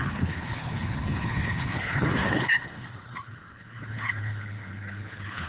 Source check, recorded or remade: remade